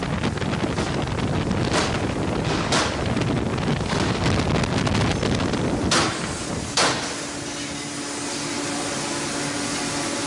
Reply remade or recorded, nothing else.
recorded